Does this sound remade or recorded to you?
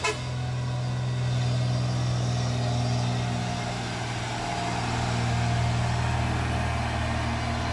recorded